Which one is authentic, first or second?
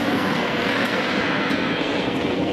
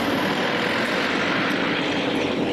second